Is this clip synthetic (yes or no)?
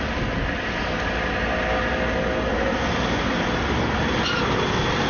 no